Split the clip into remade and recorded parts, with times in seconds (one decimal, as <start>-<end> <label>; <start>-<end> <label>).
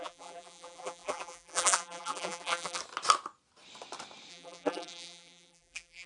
0.0-2.8 remade; 2.8-4.3 recorded; 4.3-6.1 remade